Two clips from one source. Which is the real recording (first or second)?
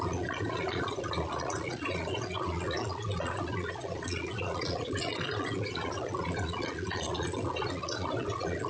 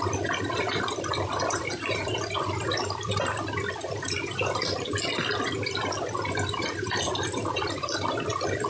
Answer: second